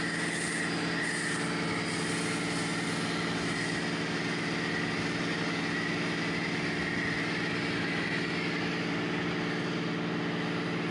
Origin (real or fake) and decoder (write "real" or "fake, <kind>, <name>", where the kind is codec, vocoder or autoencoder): real